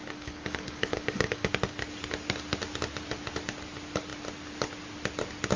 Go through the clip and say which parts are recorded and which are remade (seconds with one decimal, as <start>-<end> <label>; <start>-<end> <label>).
0.0-1.5 remade; 1.5-5.6 recorded